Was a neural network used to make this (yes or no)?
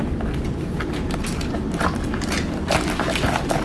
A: no